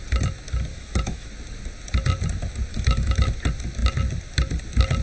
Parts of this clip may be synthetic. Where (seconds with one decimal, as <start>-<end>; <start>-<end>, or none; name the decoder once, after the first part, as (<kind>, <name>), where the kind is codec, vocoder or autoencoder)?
0.7-1.3 (autoencoder, DAC-VAE); 2.7-3.3